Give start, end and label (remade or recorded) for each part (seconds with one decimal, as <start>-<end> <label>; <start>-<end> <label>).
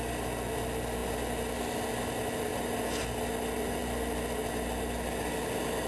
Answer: 0.0-5.9 recorded